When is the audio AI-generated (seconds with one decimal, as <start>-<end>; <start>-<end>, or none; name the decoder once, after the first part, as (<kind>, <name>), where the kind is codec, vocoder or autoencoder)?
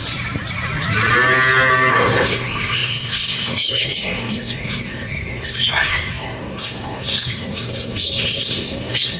1.9-9.2 (codec, SNAC)